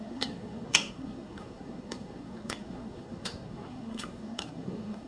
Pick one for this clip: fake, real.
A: fake